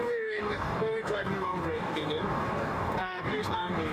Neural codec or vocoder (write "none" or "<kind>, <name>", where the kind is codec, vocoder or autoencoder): codec, DAC